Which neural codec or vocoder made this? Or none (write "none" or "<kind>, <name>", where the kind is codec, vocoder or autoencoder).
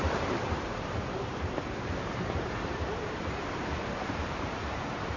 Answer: vocoder, BigVGAN v2